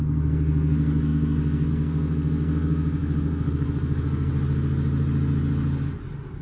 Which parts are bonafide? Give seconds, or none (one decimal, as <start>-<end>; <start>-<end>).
4.3-6.4